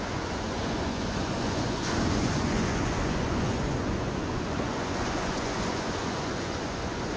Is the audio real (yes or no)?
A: no